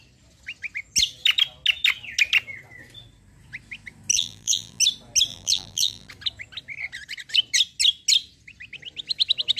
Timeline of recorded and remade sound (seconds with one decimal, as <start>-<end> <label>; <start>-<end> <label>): 0.0-4.1 recorded; 4.1-4.8 remade; 4.8-5.3 recorded; 5.3-6.1 remade; 6.1-9.6 recorded